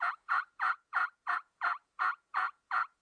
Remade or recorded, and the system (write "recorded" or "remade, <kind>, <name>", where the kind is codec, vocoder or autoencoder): remade, vocoder, Vocos